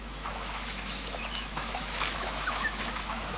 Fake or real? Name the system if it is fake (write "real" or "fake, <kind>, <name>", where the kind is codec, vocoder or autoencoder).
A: fake, autoencoder, DAC-VAE